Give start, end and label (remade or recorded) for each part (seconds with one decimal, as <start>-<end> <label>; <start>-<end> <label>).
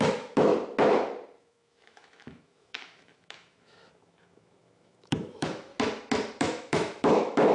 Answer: 0.0-0.5 remade; 0.5-1.4 recorded; 1.4-5.7 remade; 5.7-6.4 recorded; 6.4-7.5 remade